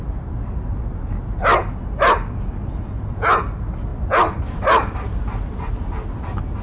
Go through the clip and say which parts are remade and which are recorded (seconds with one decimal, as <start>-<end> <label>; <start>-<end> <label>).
0.0-6.6 recorded